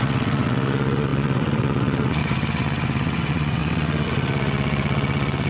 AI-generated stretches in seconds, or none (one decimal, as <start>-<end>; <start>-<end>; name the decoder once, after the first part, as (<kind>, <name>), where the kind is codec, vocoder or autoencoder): 0.0-5.5 (vocoder, WaveNeXt)